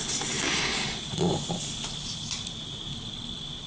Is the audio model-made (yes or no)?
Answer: no